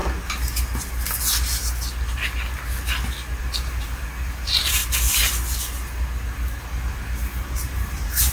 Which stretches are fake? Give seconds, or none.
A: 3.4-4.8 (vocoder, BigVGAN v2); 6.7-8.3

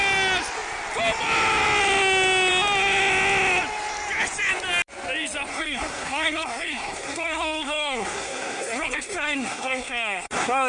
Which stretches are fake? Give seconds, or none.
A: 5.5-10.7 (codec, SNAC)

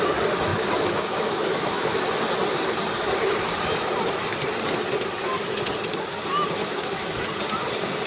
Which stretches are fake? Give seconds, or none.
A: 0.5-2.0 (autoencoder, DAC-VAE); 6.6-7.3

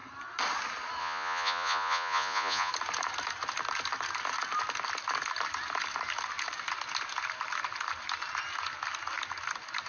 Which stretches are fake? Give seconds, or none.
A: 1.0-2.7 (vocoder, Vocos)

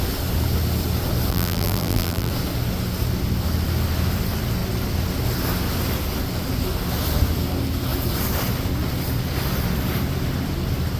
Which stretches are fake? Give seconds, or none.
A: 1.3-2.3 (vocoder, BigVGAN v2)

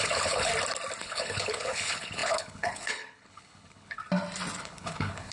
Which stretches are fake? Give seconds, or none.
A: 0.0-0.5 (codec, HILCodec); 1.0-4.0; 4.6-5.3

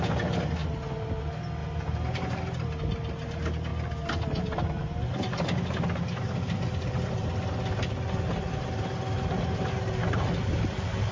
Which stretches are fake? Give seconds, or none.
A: 1.6-2.4 (vocoder, BigVGAN v2)

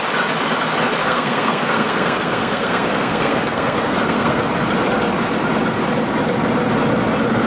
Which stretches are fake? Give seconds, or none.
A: 1.0-4.4 (codec, SNAC)